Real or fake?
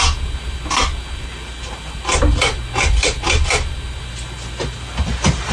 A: real